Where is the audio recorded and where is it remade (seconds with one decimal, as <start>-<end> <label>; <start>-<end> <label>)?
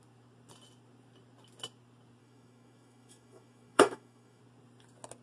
0.0-2.2 recorded; 2.2-4.4 remade; 4.4-5.2 recorded